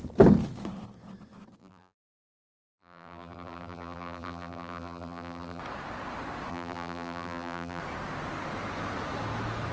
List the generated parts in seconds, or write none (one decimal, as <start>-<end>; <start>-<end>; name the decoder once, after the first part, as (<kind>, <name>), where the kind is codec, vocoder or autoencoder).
1.6-5.6 (vocoder, BigVGAN v2); 6.5-7.8